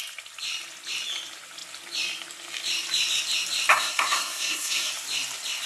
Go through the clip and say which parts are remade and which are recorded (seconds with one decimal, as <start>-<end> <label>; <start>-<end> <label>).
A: 0.0-3.7 recorded; 3.7-4.9 remade; 4.9-5.7 recorded

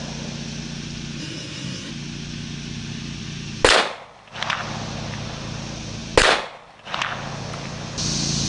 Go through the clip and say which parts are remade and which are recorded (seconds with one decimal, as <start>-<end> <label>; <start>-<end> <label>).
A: 0.0-1.2 recorded; 1.2-1.9 remade; 1.9-8.5 recorded

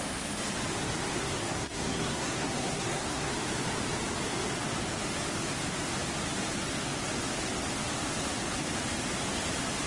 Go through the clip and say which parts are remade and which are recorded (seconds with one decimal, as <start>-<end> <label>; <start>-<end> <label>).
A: 0.0-1.1 recorded; 1.1-3.3 remade; 3.3-9.9 recorded